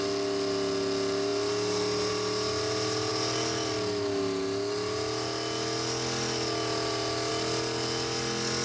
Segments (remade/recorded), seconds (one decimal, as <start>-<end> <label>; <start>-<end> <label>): 0.0-8.6 recorded